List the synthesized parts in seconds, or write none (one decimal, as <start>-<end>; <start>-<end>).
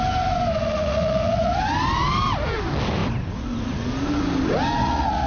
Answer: 0.6-1.6; 4.8-5.3